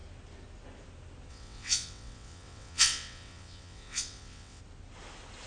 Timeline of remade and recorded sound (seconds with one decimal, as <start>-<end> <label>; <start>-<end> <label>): 0.0-1.3 recorded; 1.3-4.6 remade; 4.6-5.5 recorded